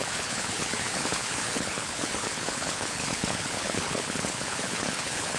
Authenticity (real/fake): fake